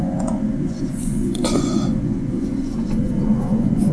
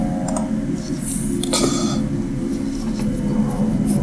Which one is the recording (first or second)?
second